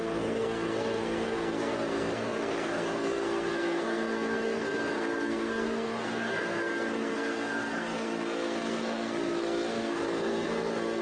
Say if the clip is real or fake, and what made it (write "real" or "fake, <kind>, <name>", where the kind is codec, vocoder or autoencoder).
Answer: fake, codec, SNAC